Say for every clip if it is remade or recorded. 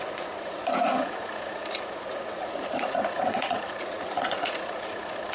remade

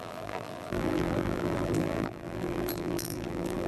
remade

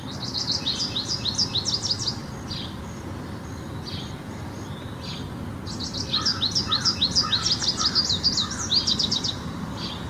recorded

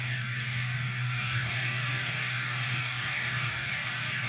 remade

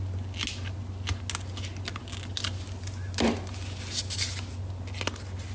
recorded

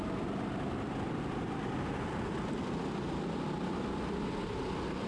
remade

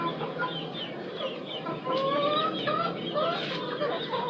recorded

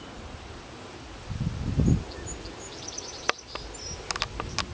recorded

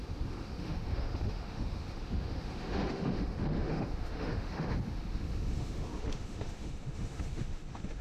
remade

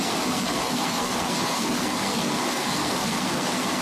remade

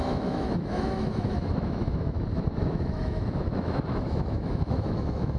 remade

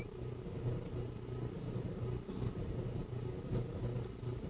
recorded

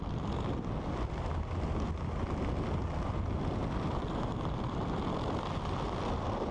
recorded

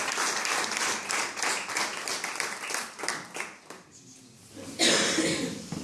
recorded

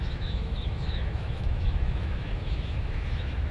remade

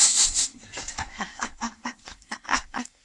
remade